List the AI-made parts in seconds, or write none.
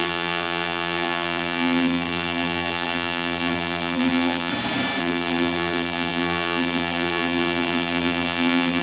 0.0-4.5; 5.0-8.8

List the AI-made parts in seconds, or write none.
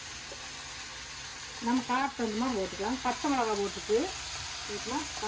none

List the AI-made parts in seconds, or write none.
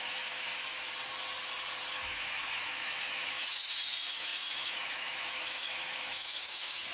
0.0-0.5; 1.9-6.9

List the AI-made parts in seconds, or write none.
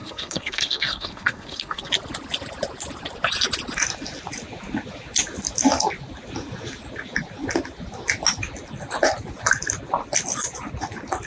0.0-1.9